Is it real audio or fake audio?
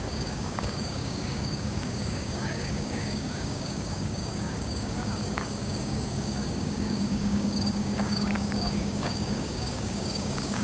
fake